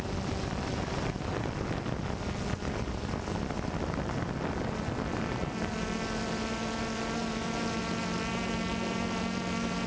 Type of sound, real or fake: real